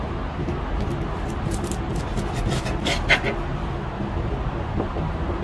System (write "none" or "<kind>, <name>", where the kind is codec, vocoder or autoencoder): none